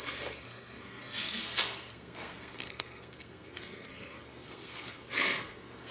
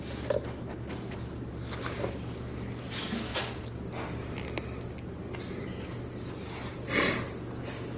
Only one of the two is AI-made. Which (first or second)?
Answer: first